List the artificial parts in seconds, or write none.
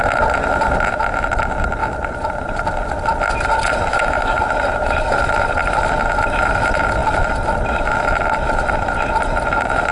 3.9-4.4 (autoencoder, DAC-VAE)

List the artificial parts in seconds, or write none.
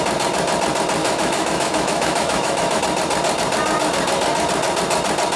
1.0-2.8 (autoencoder, DAC-VAE)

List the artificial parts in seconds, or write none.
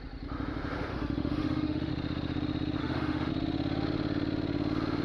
0.9-1.9 (autoencoder, DAC-VAE); 2.8-3.3